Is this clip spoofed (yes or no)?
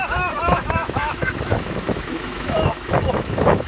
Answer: yes